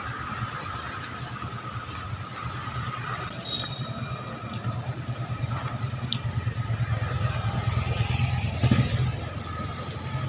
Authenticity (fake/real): real